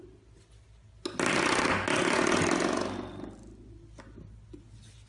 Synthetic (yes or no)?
no